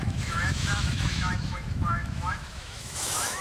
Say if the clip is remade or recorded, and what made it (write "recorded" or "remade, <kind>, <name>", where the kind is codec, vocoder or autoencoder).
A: remade, autoencoder, DAC-VAE